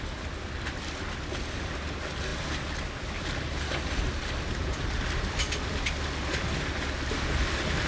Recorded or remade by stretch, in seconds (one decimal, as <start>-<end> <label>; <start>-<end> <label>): 0.0-4.6 recorded; 4.6-5.8 remade; 5.8-7.9 recorded